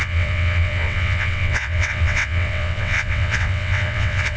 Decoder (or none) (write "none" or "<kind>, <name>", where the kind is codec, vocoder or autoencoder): vocoder, WaveNeXt